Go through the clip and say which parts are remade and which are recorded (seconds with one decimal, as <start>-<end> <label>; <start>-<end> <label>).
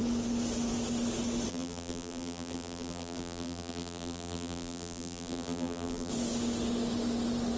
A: 0.0-1.5 recorded; 1.5-6.1 remade; 6.1-7.6 recorded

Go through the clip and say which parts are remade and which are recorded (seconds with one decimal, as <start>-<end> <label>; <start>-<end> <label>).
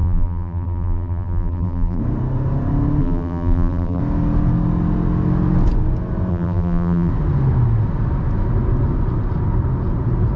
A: 0.0-2.0 remade; 2.0-3.0 recorded; 3.0-4.0 remade; 4.0-6.3 recorded; 6.3-7.1 remade; 7.1-10.4 recorded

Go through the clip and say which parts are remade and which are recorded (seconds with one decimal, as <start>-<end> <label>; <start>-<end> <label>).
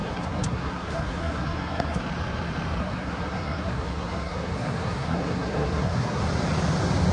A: 0.0-2.0 remade; 2.0-2.8 recorded; 2.8-6.2 remade; 6.2-7.1 recorded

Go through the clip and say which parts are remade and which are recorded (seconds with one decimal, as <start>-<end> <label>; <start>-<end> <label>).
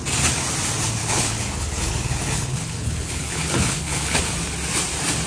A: 0.0-1.0 recorded; 1.0-4.2 remade; 4.2-5.3 recorded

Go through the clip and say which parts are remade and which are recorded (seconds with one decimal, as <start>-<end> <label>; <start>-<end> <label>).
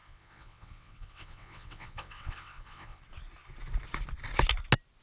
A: 0.0-3.0 remade; 3.0-5.0 recorded